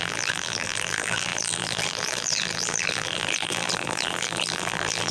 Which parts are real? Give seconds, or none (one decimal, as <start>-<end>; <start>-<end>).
none